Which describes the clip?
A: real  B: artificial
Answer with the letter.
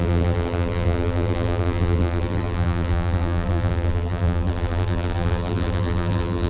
B